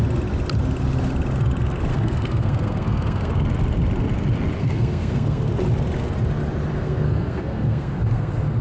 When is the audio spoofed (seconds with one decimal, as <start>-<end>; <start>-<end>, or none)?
1.9-3.3; 4.6-5.5; 6.7-8.6